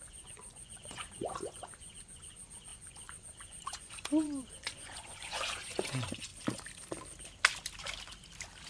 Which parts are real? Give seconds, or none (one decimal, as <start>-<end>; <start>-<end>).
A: 6.3-8.7